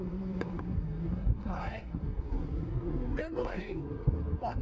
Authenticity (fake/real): fake